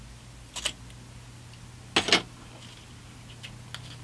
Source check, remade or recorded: recorded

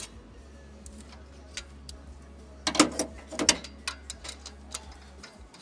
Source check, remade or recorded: recorded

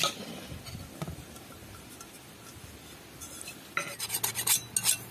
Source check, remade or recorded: recorded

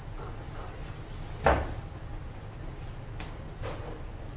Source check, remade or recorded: recorded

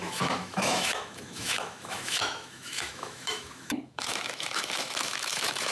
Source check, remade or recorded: remade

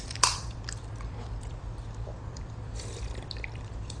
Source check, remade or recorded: remade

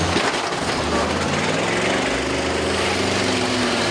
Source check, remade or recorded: recorded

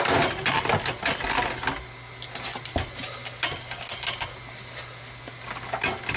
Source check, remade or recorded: recorded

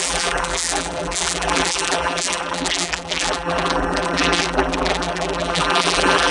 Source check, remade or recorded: remade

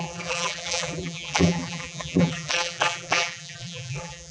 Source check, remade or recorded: remade